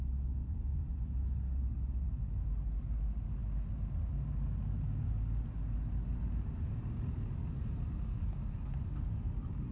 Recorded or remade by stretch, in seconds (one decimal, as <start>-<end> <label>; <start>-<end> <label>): 0.0-9.7 recorded

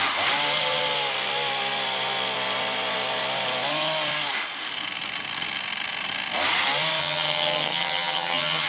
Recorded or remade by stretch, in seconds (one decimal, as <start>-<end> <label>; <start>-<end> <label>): 0.0-7.0 recorded; 7.0-8.7 remade

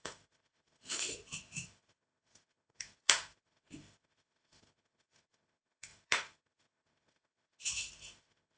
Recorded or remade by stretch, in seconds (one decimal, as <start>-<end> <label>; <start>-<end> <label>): 0.0-8.6 remade

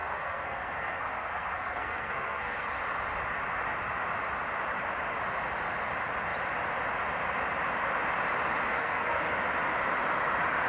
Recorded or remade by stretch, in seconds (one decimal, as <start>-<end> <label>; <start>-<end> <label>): 0.0-2.8 remade; 2.8-8.7 recorded; 8.7-9.3 remade; 9.3-10.7 recorded

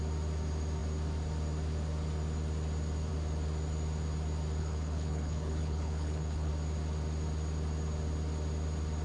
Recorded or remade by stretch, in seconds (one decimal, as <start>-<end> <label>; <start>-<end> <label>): 0.0-4.6 recorded; 4.6-6.5 remade; 6.5-9.0 recorded

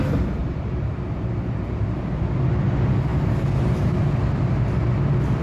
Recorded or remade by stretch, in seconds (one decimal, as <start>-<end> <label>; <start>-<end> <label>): 0.0-0.4 recorded; 0.4-1.3 remade; 1.3-3.1 recorded; 3.1-3.9 remade; 3.9-5.4 recorded

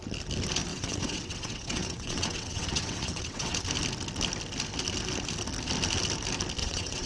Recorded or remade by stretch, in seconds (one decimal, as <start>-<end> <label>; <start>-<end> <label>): 0.0-0.7 recorded; 0.7-3.6 remade; 3.6-6.6 recorded; 6.6-7.1 remade

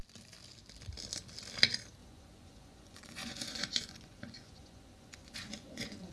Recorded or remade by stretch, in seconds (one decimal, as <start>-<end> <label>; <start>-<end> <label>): 0.0-2.0 recorded; 2.0-6.1 remade